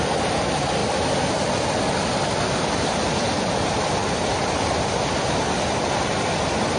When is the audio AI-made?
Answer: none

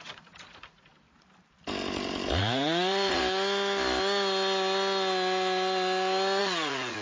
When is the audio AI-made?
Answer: 0.0-0.9 (vocoder, Vocos); 2.4-3.2; 6.4-7.0

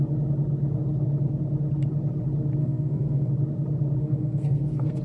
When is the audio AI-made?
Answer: 2.6-3.3 (codec, SNAC); 4.0-5.0